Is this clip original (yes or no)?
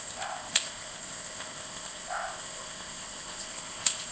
no